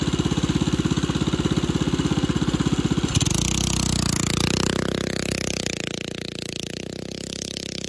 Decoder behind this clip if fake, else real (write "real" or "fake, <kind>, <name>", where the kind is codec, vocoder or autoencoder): real